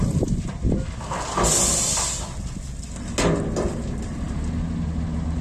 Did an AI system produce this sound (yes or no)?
no